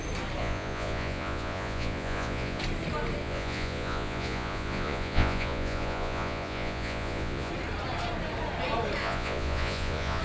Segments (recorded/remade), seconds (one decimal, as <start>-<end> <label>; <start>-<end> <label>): 0.0-0.4 recorded; 0.4-2.6 remade; 2.6-3.2 recorded; 3.2-7.5 remade; 7.5-9.0 recorded; 9.0-10.2 remade